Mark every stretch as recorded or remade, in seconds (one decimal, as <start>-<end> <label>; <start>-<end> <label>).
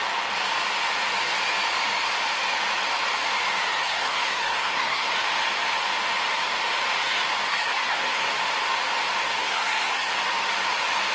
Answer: 0.0-3.8 recorded; 3.8-5.1 remade; 5.1-7.5 recorded; 7.5-8.3 remade; 8.3-9.4 recorded; 9.4-10.1 remade; 10.1-11.1 recorded